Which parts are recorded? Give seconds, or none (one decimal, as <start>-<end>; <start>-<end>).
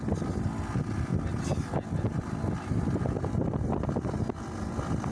0.0-5.1